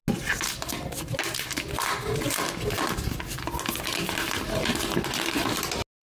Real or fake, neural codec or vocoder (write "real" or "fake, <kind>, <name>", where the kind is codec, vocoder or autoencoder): real